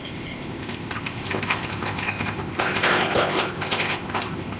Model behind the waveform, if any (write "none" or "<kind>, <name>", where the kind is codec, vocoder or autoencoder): codec, ZipCodec